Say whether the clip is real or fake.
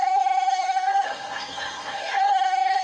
fake